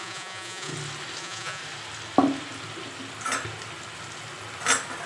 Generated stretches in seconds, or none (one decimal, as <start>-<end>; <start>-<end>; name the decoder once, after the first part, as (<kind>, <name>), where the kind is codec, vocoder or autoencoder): 0.0-0.7 (vocoder, Vocos); 1.2-1.6